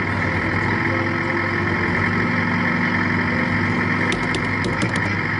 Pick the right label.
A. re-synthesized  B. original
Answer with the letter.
B